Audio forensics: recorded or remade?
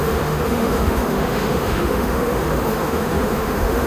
remade